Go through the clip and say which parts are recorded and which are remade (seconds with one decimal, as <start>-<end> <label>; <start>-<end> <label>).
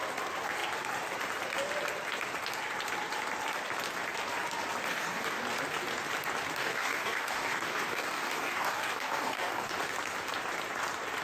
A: 0.0-4.9 recorded; 4.9-5.4 remade; 5.4-6.6 recorded; 6.6-9.7 remade; 9.7-11.2 recorded